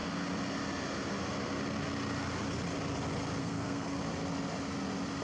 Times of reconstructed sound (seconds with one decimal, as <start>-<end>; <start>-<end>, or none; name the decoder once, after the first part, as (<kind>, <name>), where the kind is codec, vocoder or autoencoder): 3.4-4.0 (codec, SNAC)